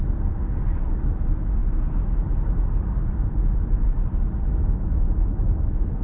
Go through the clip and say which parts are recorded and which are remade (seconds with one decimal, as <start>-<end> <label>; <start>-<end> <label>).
0.0-1.0 recorded; 1.0-1.6 remade; 1.6-4.4 recorded; 4.4-6.0 remade